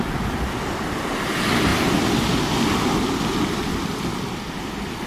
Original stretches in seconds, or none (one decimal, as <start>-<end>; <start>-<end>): 0.0-5.1